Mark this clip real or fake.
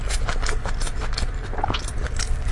real